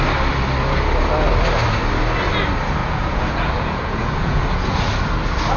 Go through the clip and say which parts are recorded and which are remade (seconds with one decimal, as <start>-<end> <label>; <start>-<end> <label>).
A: 0.0-2.8 recorded; 2.8-4.9 remade; 4.9-5.6 recorded